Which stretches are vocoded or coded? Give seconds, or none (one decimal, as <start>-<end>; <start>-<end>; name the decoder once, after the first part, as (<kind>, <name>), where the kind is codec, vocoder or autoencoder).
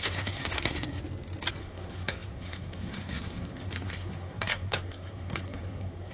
0.0-1.0 (codec, SNAC); 1.6-6.1